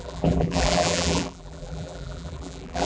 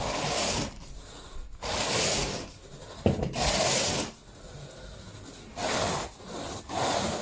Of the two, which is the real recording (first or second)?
second